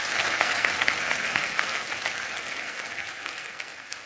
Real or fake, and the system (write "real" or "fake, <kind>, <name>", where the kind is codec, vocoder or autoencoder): fake, codec, SNAC